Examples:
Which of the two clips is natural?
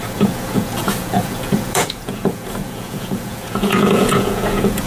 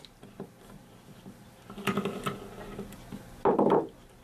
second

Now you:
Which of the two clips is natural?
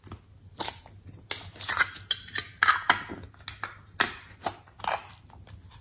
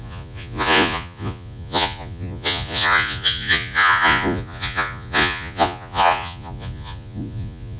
first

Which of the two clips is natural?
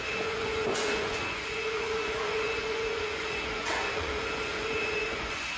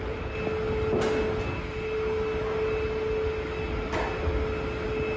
second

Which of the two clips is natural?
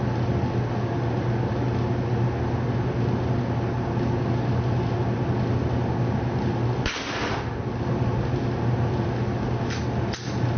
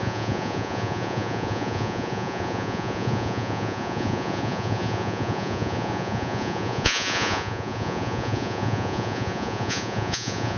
first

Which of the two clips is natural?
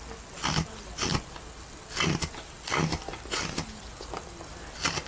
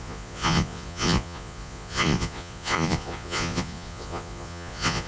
first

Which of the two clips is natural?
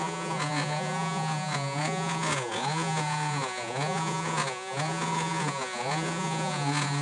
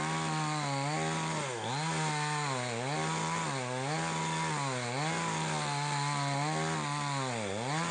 second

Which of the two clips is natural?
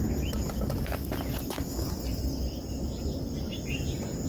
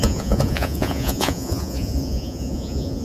first